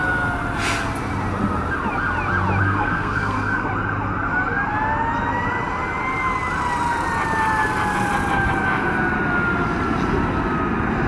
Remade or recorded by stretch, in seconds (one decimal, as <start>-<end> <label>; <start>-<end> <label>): 0.0-2.6 recorded; 2.6-3.7 remade; 3.7-11.1 recorded